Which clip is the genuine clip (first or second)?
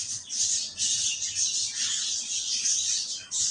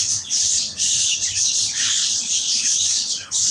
first